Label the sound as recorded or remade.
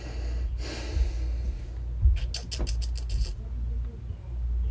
recorded